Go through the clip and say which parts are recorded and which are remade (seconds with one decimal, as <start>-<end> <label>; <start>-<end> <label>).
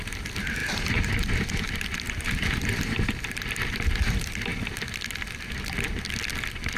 0.0-6.8 recorded